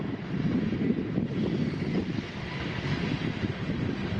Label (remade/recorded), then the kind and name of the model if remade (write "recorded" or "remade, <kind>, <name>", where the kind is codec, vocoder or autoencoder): remade, vocoder, BigVGAN v2